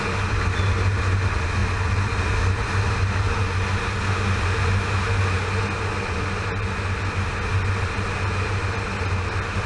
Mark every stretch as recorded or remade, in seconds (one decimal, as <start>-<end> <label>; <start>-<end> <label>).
0.0-9.7 recorded